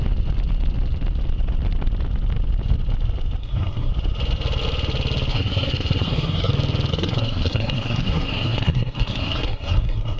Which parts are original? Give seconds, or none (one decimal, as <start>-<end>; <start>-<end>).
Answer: 0.0-3.4; 3.9-5.3; 6.5-6.9